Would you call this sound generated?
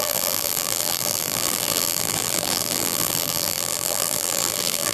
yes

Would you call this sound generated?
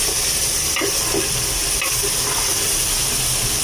no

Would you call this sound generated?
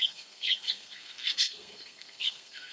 yes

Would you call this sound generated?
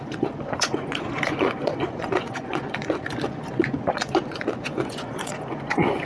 yes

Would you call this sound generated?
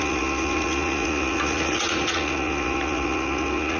yes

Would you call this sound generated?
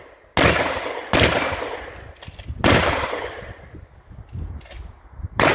no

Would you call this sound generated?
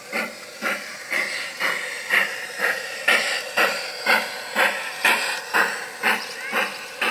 no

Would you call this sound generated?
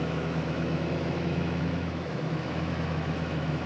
yes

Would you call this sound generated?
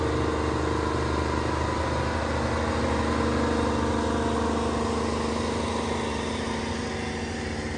no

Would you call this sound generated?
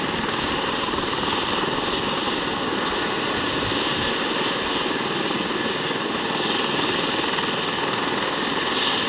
no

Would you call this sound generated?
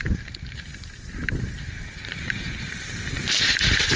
yes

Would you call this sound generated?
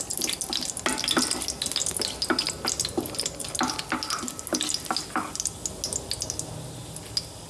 no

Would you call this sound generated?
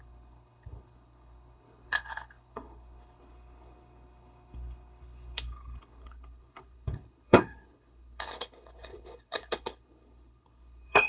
yes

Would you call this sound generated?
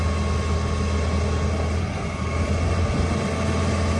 no